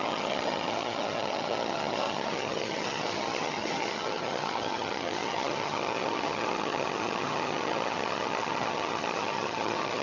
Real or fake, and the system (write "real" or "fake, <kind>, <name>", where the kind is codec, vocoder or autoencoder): fake, vocoder, HiFi-GAN